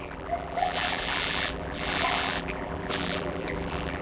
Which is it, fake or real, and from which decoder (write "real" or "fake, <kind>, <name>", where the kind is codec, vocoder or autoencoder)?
fake, vocoder, BigVGAN v2